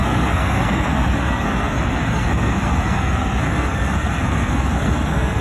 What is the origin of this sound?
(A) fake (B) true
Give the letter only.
A